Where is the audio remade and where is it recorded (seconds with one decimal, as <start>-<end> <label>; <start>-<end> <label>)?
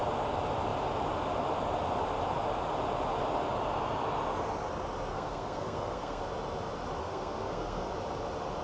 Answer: 0.0-5.1 recorded; 5.1-6.2 remade; 6.2-7.0 recorded; 7.0-7.9 remade; 7.9-8.6 recorded